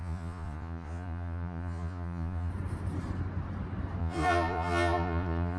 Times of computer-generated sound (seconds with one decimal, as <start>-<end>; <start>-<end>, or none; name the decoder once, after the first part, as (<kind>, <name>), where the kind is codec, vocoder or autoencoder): 0.0-2.5 (vocoder, Vocos); 4.0-5.6